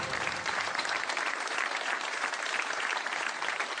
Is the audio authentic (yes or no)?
no